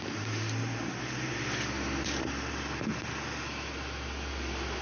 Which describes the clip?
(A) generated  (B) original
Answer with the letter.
B